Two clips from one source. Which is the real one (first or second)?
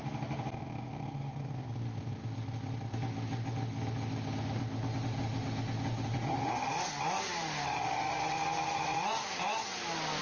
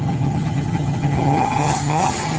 first